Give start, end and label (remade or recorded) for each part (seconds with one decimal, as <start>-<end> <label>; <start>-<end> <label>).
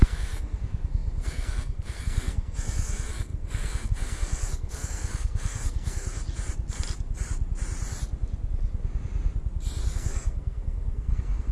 0.0-6.2 remade; 6.2-9.9 recorded; 9.9-11.5 remade